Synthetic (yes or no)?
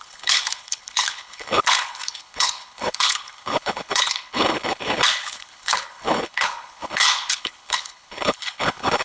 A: yes